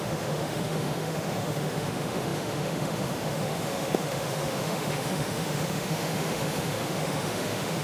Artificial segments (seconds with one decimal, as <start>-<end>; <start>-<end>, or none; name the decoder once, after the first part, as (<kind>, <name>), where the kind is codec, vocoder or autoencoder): 0.0-7.8 (autoencoder, DAC-VAE)